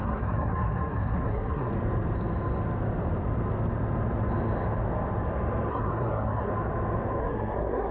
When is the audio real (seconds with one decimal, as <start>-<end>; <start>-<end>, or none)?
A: 1.7-5.7; 6.5-7.2